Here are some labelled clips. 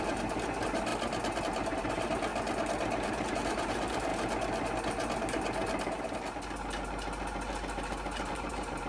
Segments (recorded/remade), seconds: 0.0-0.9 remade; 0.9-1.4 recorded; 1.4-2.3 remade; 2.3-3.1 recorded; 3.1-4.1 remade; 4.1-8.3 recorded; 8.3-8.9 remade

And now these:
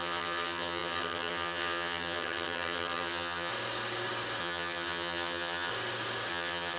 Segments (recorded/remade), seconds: 0.0-3.5 remade; 3.5-4.4 recorded; 4.4-5.7 remade; 5.7-6.3 recorded; 6.3-6.8 remade

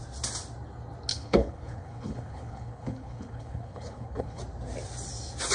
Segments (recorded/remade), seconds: 0.0-1.1 recorded; 1.1-4.4 remade; 4.4-5.5 recorded

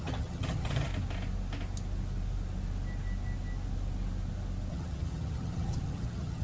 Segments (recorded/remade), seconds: 0.0-0.9 remade; 0.9-4.7 recorded; 4.7-6.4 remade

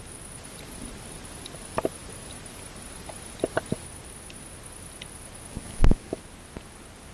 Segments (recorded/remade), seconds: 0.0-5.5 recorded; 5.5-6.2 remade; 6.2-7.1 recorded